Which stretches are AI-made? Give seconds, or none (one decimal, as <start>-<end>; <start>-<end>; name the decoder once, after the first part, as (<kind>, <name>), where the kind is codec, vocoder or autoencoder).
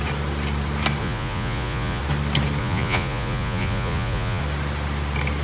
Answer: 1.0-2.0 (vocoder, Vocos); 2.6-4.4